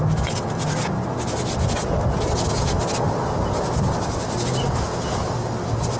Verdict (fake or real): real